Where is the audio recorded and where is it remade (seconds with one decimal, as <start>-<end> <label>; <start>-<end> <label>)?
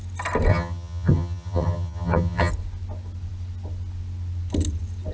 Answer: 0.0-0.5 recorded; 0.5-2.5 remade; 2.5-5.1 recorded